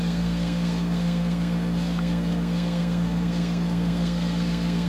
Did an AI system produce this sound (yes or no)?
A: yes